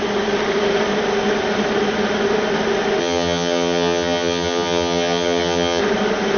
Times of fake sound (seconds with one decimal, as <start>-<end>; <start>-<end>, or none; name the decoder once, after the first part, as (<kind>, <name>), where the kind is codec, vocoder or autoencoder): 3.0-5.8 (vocoder, HiFi-GAN)